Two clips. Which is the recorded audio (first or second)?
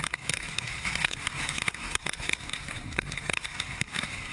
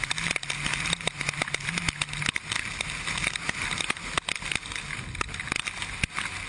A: second